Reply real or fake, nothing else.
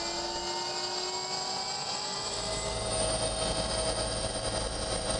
real